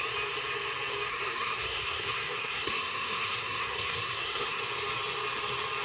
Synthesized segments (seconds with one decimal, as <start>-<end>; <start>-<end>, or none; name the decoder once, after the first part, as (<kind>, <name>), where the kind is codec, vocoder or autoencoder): 1.1-4.6 (codec, SNAC)